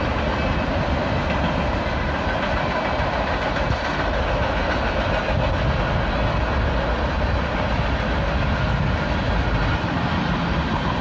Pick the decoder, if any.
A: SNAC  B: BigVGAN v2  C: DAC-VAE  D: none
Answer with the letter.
D